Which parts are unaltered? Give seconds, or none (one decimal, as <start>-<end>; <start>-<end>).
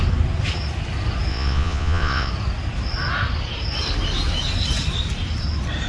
0.0-1.3; 2.3-5.9